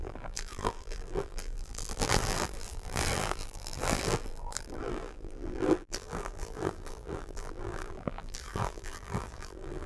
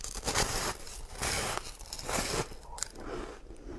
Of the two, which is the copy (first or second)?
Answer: first